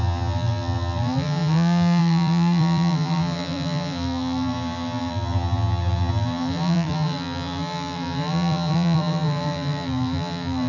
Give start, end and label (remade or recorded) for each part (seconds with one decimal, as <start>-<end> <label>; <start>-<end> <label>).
0.0-10.7 remade